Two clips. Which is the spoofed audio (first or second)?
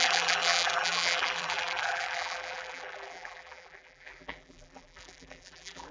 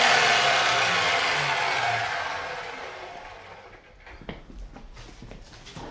first